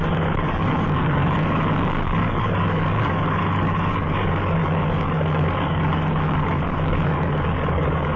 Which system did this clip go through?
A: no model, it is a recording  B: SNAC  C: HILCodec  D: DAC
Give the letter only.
D